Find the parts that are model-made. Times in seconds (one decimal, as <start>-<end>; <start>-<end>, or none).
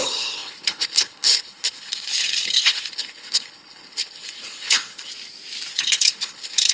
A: 0.0-5.1; 5.7-6.7